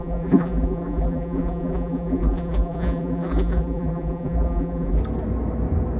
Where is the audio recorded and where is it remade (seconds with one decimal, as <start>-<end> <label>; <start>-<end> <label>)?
0.0-5.0 remade; 5.0-6.0 recorded